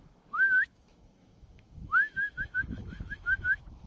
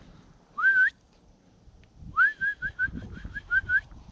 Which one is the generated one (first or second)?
first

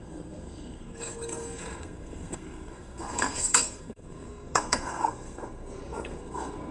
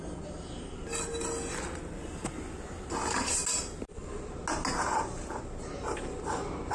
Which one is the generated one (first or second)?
first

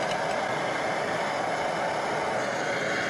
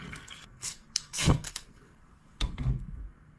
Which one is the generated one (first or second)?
second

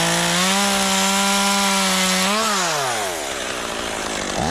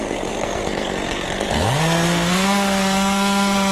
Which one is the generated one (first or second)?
second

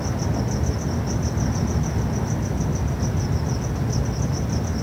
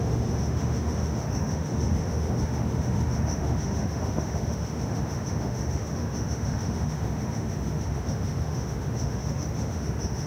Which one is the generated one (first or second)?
second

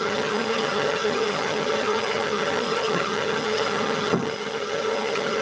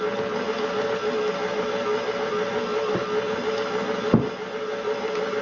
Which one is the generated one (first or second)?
first